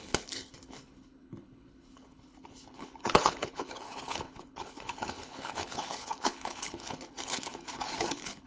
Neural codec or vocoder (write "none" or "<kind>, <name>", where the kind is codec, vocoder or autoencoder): codec, HILCodec